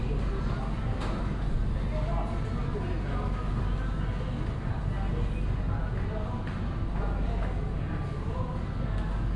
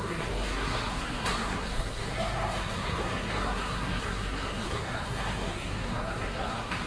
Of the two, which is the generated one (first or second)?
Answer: second